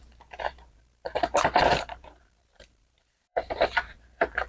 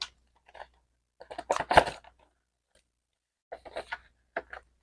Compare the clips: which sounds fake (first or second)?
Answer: first